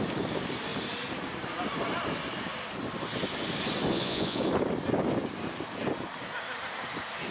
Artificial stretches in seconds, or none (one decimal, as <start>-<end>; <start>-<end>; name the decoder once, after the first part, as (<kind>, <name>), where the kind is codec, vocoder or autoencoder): 3.9-4.4 (vocoder, Vocos)